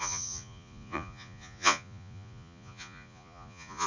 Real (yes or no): no